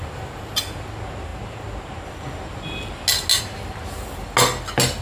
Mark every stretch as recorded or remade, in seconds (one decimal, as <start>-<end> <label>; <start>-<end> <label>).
0.0-5.0 recorded